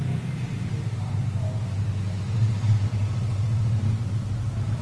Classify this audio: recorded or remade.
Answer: recorded